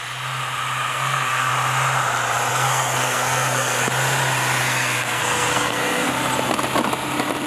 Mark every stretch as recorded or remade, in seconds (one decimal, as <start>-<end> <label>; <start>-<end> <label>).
0.0-0.9 recorded; 0.9-1.5 remade; 1.5-2.5 recorded; 2.5-3.9 remade; 3.9-4.6 recorded; 4.6-6.1 remade; 6.1-7.5 recorded